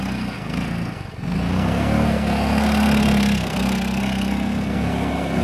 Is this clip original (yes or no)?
no